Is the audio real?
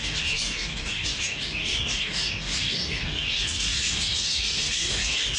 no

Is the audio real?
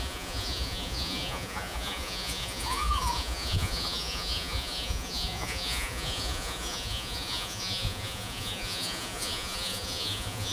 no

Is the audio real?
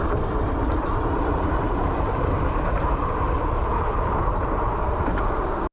no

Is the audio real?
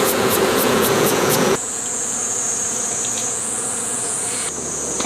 no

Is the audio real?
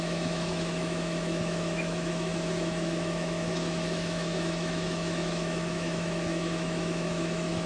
no